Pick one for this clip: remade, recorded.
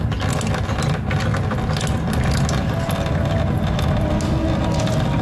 recorded